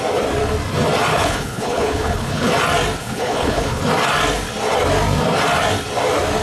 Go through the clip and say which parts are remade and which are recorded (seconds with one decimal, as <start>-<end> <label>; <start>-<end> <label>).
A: 0.0-1.1 recorded; 1.1-2.5 remade; 2.5-3.0 recorded; 3.0-3.8 remade; 3.8-6.4 recorded